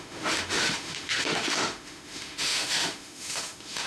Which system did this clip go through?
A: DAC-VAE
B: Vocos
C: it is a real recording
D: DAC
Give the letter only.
A